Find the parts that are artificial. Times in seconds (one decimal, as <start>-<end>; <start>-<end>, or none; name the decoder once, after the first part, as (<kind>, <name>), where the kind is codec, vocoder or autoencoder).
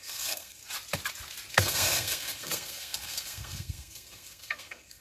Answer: 0.0-0.6 (codec, SNAC); 1.5-5.0